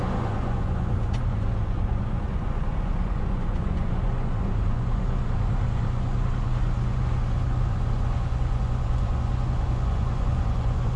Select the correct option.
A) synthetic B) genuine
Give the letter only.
A